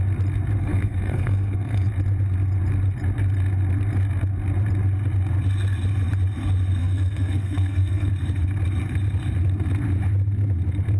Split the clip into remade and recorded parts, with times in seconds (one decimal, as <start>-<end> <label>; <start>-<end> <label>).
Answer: 0.0-0.6 recorded; 0.6-1.9 remade; 1.9-6.8 recorded; 6.8-8.1 remade; 8.1-11.0 recorded